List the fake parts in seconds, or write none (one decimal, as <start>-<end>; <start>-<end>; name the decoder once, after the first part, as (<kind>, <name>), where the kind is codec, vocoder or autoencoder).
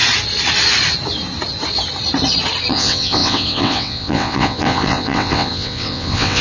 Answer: 2.7-6.4 (vocoder, WaveNeXt)